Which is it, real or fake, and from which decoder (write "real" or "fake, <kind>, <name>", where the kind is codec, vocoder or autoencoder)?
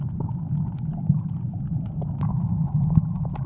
real